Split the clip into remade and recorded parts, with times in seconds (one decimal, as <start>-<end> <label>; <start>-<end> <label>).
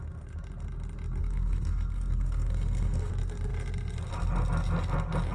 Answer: 0.0-1.2 recorded; 1.2-3.1 remade; 3.1-5.3 recorded